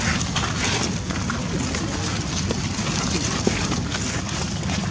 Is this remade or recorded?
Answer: recorded